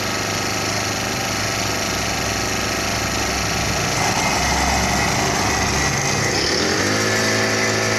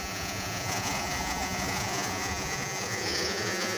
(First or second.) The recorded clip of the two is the first